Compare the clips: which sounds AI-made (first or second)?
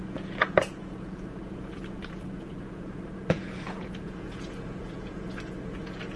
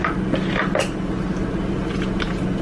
first